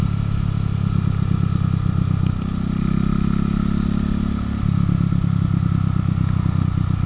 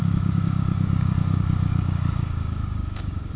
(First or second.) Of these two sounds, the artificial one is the second